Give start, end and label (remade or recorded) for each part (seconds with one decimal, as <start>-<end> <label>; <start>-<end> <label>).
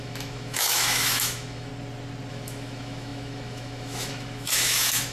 0.0-1.7 remade; 1.7-2.3 recorded; 2.3-5.1 remade